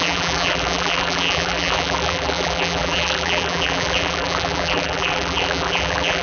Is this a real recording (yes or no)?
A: no